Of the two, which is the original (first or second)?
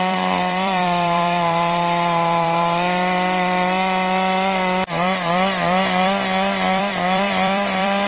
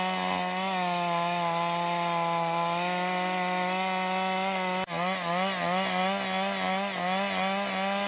second